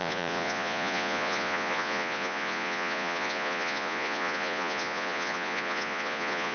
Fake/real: fake